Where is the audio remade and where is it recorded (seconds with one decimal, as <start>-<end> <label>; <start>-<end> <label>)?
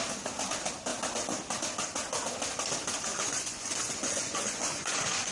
0.0-3.1 recorded; 3.1-5.3 remade